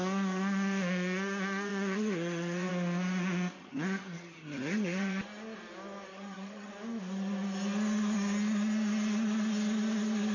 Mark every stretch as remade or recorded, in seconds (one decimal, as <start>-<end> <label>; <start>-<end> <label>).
0.0-1.7 recorded; 1.7-2.7 remade; 2.7-3.6 recorded; 3.6-5.2 remade; 5.2-6.1 recorded; 6.1-6.7 remade; 6.7-10.3 recorded